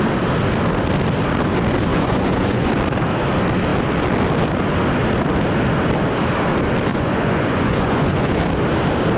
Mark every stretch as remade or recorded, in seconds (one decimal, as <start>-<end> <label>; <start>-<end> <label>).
0.0-1.9 recorded; 1.9-2.7 remade; 2.7-6.9 recorded; 6.9-8.4 remade; 8.4-9.2 recorded